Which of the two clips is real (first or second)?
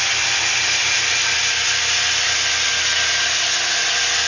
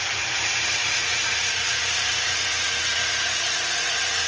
first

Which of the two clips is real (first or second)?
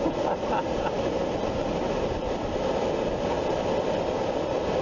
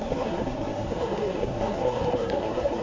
first